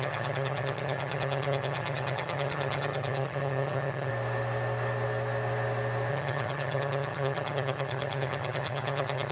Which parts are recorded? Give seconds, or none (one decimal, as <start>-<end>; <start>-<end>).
4.1-6.1